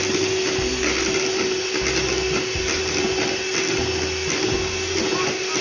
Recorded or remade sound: recorded